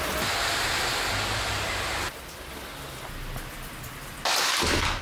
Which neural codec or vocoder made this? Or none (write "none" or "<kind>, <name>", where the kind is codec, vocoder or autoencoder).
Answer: none